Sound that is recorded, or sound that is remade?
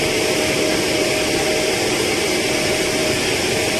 remade